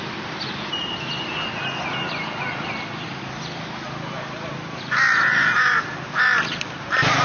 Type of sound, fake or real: real